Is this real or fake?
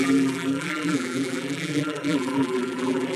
fake